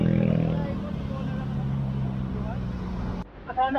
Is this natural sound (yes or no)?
yes